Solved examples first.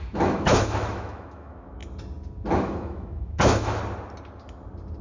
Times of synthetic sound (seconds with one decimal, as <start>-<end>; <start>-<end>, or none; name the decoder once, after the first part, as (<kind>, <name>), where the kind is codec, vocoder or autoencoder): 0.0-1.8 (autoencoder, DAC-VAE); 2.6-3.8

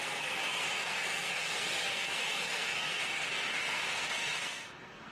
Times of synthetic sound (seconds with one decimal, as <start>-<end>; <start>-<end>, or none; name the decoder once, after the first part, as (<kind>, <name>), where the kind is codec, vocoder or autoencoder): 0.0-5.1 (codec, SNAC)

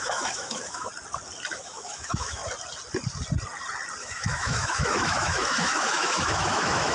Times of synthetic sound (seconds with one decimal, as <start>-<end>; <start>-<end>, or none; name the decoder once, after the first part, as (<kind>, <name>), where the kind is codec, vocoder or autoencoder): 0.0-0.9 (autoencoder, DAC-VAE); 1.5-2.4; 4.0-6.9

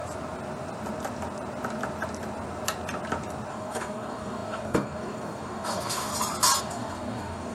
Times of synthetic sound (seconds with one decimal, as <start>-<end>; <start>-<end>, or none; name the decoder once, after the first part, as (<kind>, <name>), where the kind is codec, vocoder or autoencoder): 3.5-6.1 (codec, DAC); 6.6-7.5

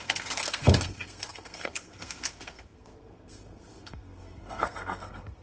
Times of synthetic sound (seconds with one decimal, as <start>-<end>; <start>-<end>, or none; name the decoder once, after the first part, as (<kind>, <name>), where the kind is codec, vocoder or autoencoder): 0.0-5.4 (codec, SNAC)

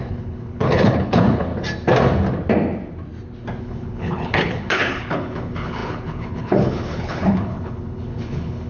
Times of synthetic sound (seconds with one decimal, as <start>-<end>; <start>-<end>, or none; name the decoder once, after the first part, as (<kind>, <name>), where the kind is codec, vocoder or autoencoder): 0.0-1.5 (codec, HILCodec); 3.6-8.7